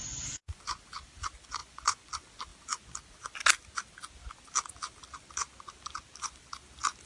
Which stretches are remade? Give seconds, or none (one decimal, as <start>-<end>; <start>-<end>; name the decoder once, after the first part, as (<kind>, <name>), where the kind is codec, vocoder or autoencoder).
0.0-0.6 (vocoder, Vocos); 1.6-2.1